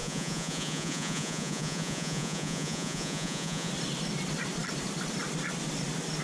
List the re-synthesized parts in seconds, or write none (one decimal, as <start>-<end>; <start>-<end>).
0.0-3.7